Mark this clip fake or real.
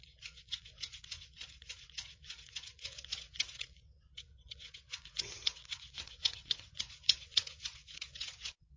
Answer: fake